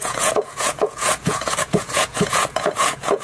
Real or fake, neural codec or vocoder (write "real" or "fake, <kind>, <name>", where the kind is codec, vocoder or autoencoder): fake, vocoder, Vocos